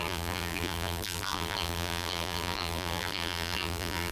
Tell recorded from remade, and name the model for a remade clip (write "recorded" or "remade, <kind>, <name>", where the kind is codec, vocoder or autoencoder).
remade, vocoder, BigVGAN v2